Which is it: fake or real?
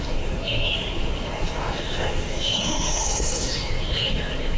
fake